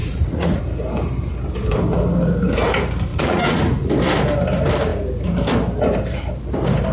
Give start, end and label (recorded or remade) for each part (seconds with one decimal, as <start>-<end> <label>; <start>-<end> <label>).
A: 0.0-0.6 remade; 0.6-3.1 recorded; 3.1-3.9 remade; 3.9-6.9 recorded